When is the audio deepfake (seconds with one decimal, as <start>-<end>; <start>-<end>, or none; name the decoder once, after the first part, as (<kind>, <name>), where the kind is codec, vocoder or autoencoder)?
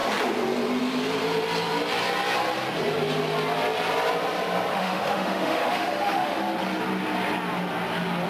4.7-6.4 (autoencoder, DAC-VAE)